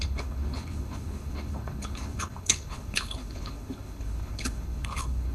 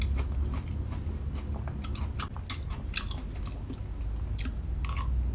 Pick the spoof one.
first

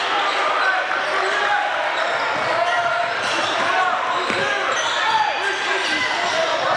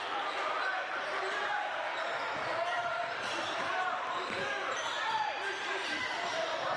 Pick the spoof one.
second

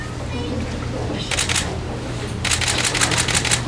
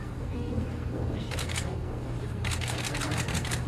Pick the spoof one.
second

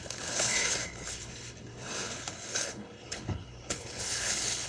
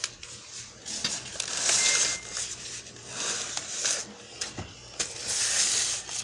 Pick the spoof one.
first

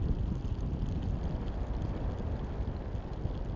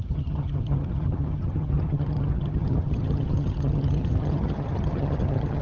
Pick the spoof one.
second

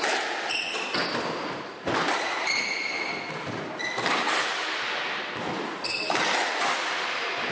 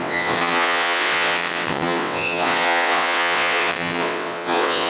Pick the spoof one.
second